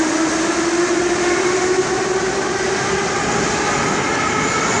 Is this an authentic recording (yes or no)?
yes